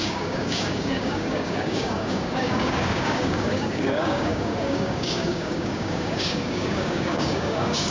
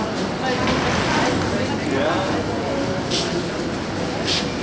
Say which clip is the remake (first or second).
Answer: first